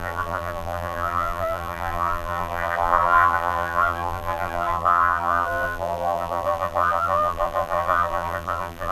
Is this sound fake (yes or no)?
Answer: yes